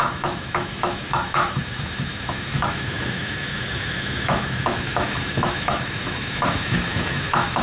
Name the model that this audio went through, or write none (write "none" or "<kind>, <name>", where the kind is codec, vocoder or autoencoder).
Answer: autoencoder, DAC-VAE